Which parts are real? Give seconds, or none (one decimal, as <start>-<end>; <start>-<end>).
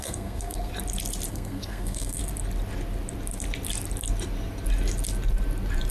0.7-1.3; 2.2-5.9